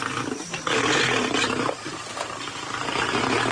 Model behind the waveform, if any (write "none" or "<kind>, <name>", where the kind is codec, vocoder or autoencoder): none